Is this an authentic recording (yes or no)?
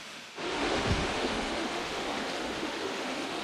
no